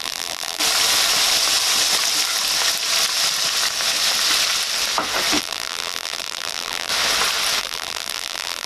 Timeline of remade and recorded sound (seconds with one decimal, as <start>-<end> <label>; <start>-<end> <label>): 0.0-0.6 remade; 0.6-5.4 recorded; 5.4-6.9 remade; 6.9-7.6 recorded; 7.6-8.7 remade